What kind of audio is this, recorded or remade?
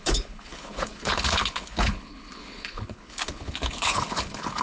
remade